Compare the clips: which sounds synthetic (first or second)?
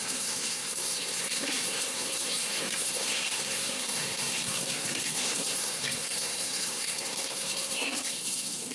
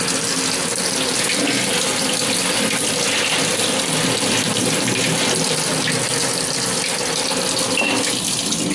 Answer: first